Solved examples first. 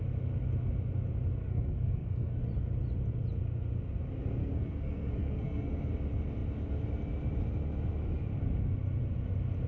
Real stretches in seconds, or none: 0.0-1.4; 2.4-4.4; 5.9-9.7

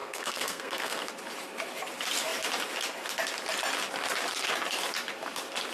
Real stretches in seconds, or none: 1.1-5.7